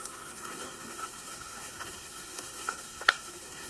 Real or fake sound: fake